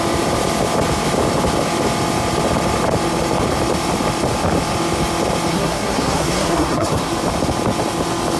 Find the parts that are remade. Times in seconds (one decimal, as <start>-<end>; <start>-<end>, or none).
5.5-7.1